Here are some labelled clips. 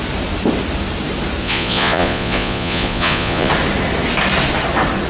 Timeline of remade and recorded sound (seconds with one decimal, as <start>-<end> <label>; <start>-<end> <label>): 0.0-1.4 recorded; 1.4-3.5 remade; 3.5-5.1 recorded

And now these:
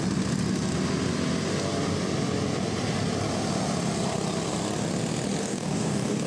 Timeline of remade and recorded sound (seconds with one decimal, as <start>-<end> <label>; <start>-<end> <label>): 0.0-5.4 recorded; 5.4-6.3 remade

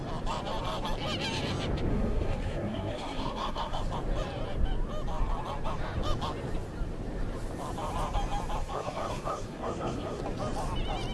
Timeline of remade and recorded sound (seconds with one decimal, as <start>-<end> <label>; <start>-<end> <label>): 0.0-1.9 recorded; 1.9-3.8 remade; 3.8-8.6 recorded; 8.6-10.2 remade; 10.2-11.1 recorded

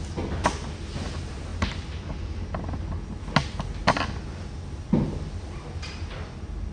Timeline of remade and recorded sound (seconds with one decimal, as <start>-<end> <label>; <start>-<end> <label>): 0.0-6.7 recorded

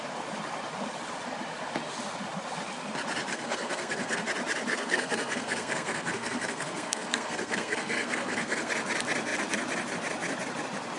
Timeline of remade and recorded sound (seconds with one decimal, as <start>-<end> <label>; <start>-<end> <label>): 0.0-3.3 recorded; 3.3-4.2 remade; 4.2-4.7 recorded; 4.7-8.7 remade; 8.7-11.0 recorded

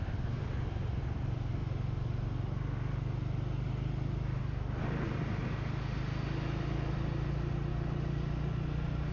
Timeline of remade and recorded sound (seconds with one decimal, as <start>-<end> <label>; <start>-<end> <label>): 0.0-9.1 recorded

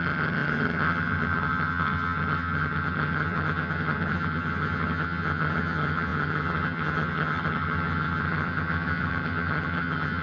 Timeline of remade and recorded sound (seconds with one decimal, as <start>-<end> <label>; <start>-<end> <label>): 0.0-10.2 remade